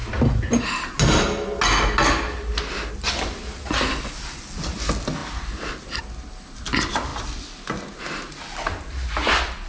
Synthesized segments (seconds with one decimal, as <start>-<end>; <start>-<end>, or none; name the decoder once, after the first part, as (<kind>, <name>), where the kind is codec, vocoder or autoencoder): none

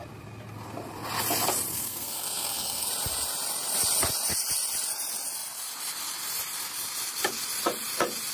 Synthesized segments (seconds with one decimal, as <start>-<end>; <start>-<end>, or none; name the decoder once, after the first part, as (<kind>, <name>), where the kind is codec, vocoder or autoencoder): 1.7-2.9 (codec, SNAC)

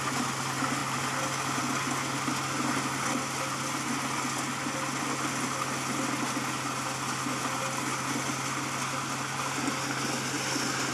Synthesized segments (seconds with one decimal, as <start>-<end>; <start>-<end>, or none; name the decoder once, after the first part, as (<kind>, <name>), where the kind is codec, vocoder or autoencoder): none

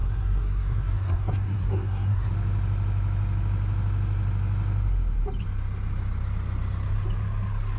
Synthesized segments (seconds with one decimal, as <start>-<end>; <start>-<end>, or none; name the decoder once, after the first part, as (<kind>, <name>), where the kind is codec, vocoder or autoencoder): 0.0-2.3 (codec, SNAC)

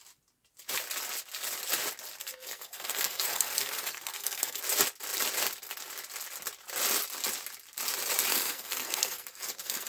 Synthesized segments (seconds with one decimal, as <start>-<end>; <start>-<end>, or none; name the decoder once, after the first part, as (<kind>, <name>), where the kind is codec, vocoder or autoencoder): 2.2-4.6 (codec, SNAC); 8.3-9.9

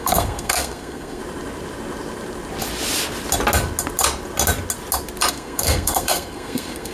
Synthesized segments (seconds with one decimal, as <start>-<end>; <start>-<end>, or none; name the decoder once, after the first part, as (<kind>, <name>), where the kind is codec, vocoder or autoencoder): 0.0-1.2 (codec, SNAC); 5.3-6.9

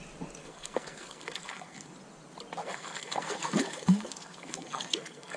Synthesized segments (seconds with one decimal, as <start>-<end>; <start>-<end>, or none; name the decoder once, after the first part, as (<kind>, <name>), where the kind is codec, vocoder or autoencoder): 0.4-1.9 (codec, SNAC); 2.6-5.4

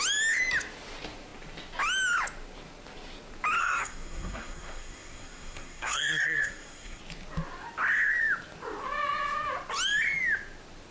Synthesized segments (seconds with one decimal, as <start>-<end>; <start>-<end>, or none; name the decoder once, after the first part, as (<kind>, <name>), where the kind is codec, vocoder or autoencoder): 3.6-7.0 (codec, SNAC)